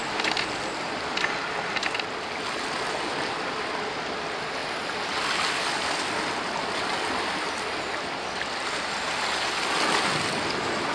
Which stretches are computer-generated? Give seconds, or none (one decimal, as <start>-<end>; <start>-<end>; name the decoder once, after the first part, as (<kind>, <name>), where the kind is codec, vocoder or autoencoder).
none